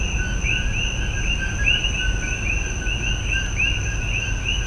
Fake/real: real